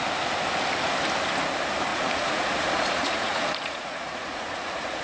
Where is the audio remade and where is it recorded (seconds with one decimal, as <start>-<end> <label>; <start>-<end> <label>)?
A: 0.0-1.9 recorded; 1.9-5.0 remade